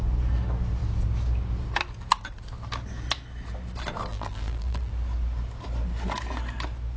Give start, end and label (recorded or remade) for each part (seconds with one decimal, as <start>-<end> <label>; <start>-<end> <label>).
0.0-4.1 recorded; 4.1-4.9 remade; 4.9-7.0 recorded